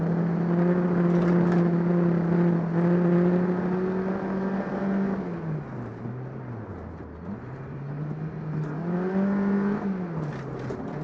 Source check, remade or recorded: recorded